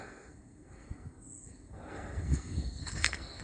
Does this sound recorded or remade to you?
remade